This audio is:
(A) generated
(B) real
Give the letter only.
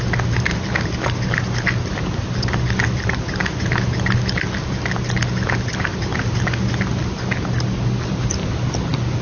B